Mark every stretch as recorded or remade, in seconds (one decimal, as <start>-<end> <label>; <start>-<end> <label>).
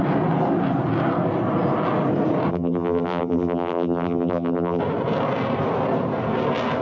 0.0-2.5 recorded; 2.5-4.8 remade; 4.8-6.8 recorded